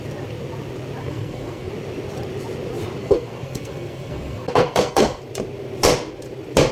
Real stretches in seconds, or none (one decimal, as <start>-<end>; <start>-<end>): 0.0-1.0; 1.7-3.0; 5.2-6.7